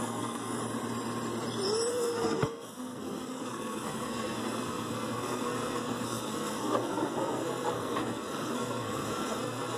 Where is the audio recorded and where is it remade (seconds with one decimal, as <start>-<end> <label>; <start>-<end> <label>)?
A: 0.0-0.6 remade; 0.6-1.9 recorded; 1.9-9.8 remade